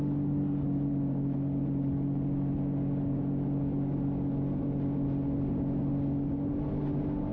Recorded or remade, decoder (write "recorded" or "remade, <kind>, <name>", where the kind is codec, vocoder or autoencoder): recorded